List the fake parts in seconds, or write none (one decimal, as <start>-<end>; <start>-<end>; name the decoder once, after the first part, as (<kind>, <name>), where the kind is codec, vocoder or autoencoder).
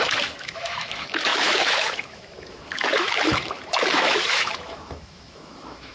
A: 0.0-5.9 (autoencoder, DAC-VAE)